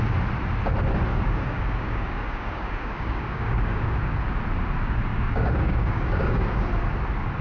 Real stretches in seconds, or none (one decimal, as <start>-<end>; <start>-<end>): 0.0-1.1; 4.2-5.1; 6.6-7.4